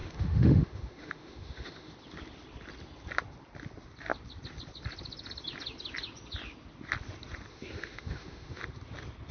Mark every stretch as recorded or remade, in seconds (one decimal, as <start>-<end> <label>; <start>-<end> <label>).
0.0-1.9 remade; 1.9-7.5 recorded; 7.5-8.6 remade; 8.6-9.3 recorded